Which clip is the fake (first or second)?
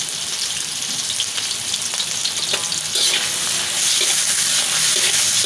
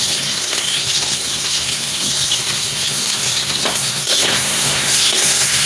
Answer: second